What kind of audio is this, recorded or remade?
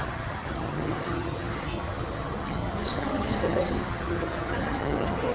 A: remade